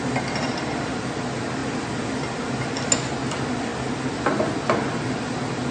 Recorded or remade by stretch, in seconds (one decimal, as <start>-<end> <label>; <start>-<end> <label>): 0.0-5.7 recorded

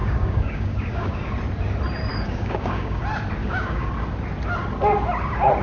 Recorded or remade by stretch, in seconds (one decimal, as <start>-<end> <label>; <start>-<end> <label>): 0.0-1.3 remade; 1.3-2.1 recorded; 2.1-3.0 remade; 3.0-3.4 recorded; 3.4-3.9 remade; 3.9-5.6 recorded